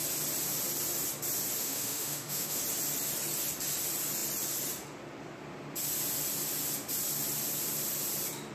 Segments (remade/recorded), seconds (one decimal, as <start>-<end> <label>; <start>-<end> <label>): 0.0-1.6 recorded; 1.6-2.6 remade; 2.6-8.5 recorded